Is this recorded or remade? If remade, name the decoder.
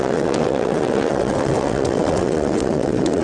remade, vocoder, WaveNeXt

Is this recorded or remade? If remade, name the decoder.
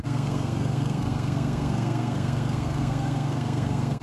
remade, codec, SNAC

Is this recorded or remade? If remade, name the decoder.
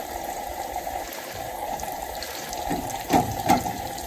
remade, vocoder, BigVGAN v2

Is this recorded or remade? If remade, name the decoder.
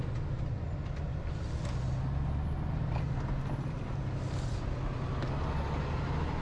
recorded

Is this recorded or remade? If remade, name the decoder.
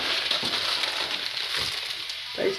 recorded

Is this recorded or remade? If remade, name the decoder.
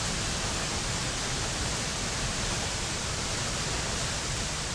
recorded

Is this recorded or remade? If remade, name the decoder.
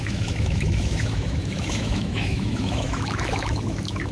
remade, autoencoder, DAC-VAE